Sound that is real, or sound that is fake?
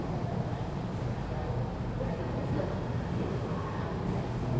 real